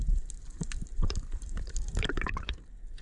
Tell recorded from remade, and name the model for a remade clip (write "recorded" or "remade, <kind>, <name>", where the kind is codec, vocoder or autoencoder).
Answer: remade, vocoder, BigVGAN v2